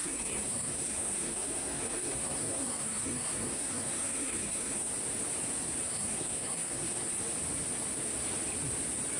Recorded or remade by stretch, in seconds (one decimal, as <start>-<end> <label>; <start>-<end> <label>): 0.0-4.9 remade; 4.9-5.8 recorded; 5.8-7.2 remade; 7.2-9.2 recorded